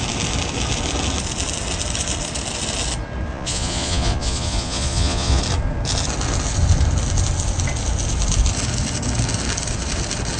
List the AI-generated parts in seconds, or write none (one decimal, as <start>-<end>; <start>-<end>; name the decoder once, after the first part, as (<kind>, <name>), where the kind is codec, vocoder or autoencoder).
3.3-5.4 (vocoder, Vocos)